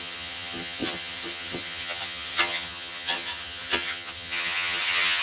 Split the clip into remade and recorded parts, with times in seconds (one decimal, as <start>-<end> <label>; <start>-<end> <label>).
0.0-5.2 remade